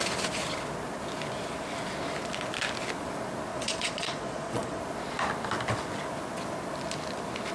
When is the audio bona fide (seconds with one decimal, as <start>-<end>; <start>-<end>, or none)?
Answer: 0.0-3.5; 4.8-7.5